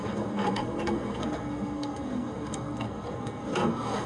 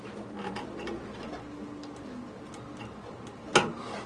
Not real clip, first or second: first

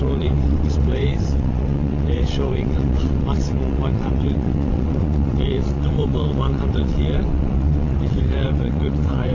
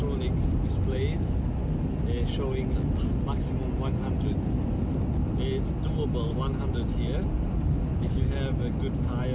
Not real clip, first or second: first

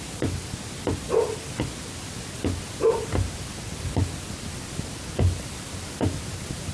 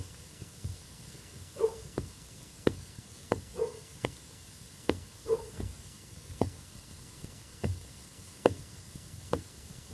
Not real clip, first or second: second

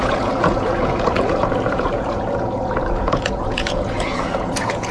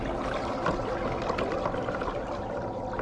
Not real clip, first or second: first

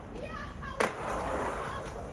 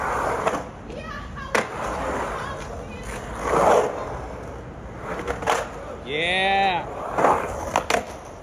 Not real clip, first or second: first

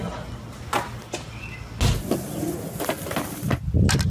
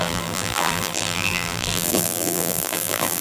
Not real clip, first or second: second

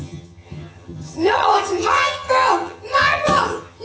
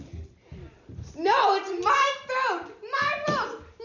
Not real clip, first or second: first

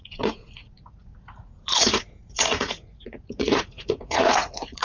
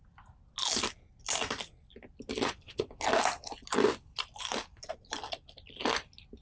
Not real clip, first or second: first